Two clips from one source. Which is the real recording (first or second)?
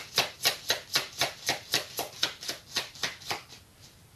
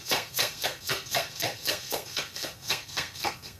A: first